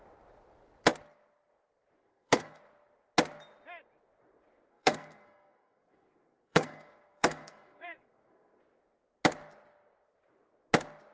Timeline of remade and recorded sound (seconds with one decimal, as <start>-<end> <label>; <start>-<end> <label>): 0.0-2.0 recorded; 2.0-2.6 remade; 2.6-4.7 recorded; 4.7-8.6 remade; 8.6-11.1 recorded